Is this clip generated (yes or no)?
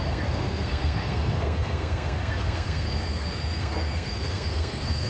yes